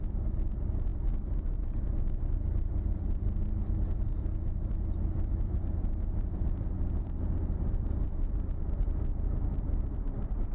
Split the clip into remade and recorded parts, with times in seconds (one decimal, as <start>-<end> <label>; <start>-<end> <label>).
0.0-10.5 remade